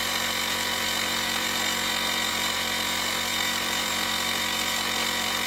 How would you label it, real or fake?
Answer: fake